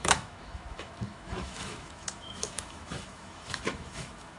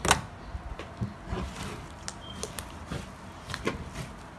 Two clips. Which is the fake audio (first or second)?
first